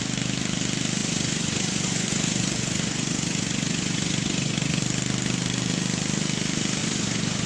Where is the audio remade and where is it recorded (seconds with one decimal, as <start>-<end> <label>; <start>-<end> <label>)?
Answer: 0.0-1.0 recorded; 1.0-4.8 remade; 4.8-6.8 recorded; 6.8-7.5 remade